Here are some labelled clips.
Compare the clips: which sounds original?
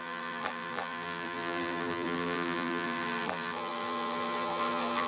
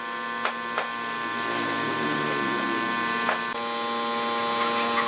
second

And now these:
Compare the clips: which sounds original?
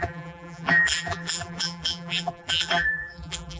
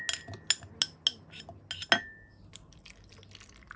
second